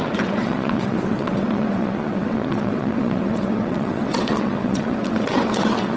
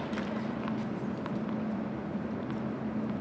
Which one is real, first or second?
second